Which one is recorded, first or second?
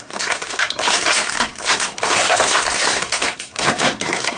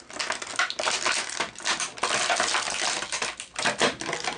second